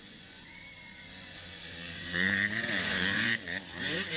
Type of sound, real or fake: fake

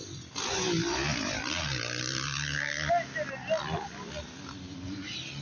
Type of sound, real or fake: real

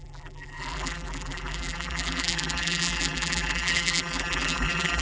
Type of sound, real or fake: fake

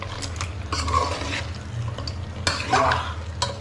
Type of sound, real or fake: real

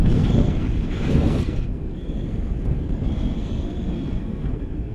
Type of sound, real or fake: fake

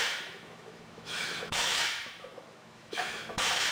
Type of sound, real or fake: fake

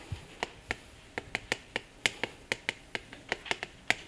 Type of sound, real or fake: real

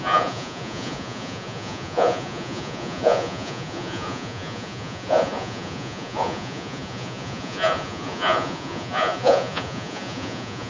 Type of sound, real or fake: fake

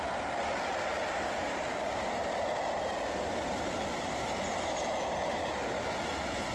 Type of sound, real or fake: real